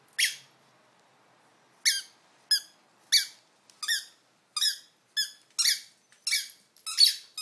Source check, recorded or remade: recorded